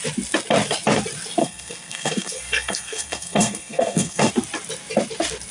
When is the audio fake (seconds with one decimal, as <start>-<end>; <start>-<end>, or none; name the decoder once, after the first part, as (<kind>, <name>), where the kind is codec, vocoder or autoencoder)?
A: 1.4-4.3 (codec, SNAC)

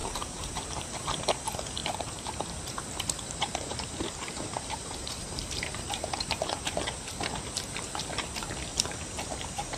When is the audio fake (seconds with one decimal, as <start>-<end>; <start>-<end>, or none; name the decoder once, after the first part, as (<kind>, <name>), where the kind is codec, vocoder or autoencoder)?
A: 0.0-1.2 (vocoder, BigVGAN v2); 1.8-6.6; 8.7-9.8

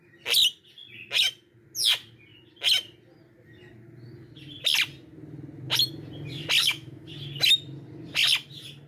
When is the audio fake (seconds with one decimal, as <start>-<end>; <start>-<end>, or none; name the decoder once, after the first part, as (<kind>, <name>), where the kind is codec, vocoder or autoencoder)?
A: 6.6-7.1 (autoencoder, DAC-VAE)